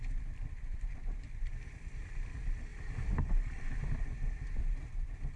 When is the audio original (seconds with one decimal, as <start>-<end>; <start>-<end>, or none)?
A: 1.5-2.0